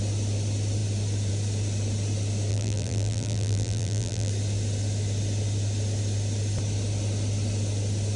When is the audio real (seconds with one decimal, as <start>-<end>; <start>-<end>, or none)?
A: 0.0-2.5; 4.3-8.2